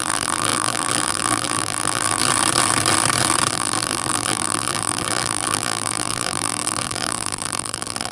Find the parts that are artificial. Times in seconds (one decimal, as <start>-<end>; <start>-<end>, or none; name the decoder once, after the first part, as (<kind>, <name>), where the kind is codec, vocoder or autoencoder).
0.0-2.2 (vocoder, BigVGAN v2); 3.5-8.1